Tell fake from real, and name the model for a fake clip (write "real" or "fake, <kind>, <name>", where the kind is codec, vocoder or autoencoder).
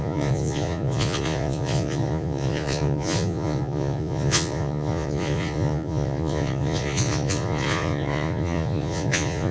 fake, vocoder, Vocos